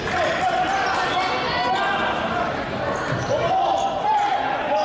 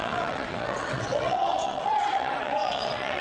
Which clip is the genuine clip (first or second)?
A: first